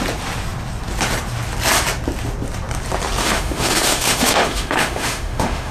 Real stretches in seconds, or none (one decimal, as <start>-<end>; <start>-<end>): 0.0-3.2